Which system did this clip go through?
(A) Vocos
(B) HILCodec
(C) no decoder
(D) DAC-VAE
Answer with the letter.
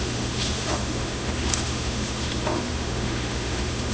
D